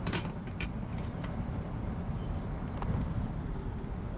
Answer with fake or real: real